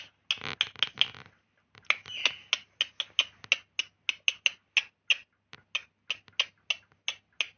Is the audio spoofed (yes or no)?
no